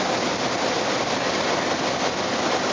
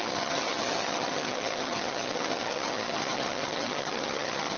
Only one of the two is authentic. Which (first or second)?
first